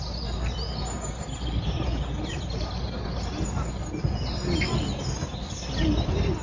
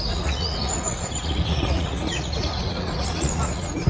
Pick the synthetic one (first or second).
second